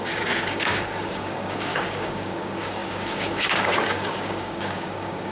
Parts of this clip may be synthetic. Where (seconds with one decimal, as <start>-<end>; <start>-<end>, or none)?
0.0-5.3

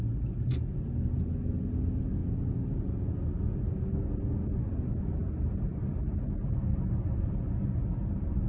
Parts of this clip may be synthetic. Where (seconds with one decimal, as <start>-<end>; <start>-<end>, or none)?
8.0-8.5

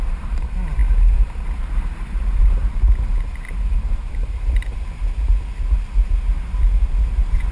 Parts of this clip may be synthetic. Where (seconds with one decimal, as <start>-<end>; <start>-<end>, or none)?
0.0-5.0; 7.0-7.5

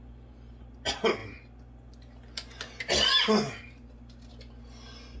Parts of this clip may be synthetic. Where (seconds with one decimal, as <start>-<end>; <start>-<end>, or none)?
none

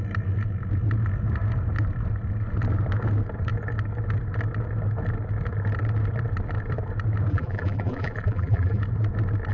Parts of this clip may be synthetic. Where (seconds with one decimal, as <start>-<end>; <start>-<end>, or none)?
7.3-8.8

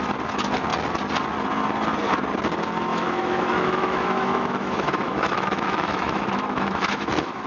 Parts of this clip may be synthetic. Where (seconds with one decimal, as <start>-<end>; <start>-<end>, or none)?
2.9-7.5